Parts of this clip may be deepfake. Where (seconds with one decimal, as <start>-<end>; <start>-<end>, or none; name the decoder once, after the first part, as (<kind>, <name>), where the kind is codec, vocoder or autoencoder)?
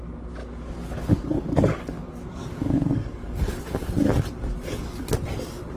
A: 0.4-3.4 (codec, DAC)